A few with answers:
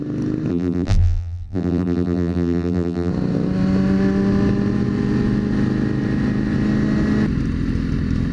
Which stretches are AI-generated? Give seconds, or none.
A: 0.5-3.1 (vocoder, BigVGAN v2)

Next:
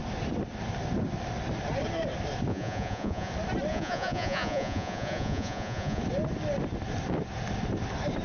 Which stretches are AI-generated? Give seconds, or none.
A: 2.5-3.3 (vocoder, Vocos); 3.7-6.0